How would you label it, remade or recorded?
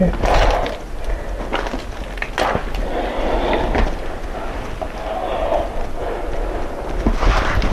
recorded